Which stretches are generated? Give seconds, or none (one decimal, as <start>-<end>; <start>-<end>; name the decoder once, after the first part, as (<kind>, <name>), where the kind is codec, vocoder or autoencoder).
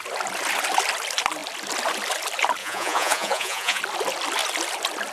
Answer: 2.6-3.8 (vocoder, Vocos)